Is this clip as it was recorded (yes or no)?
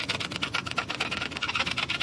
yes